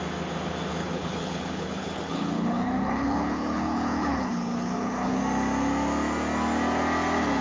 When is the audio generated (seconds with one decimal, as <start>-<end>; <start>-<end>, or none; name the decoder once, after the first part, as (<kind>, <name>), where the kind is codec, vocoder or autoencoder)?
0.8-5.2 (codec, HILCodec)